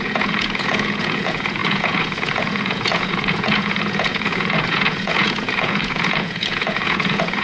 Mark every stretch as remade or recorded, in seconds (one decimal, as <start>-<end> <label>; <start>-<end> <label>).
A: 0.0-7.4 remade